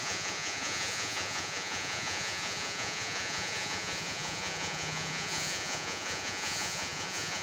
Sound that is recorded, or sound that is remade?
remade